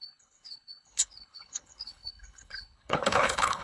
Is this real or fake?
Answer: fake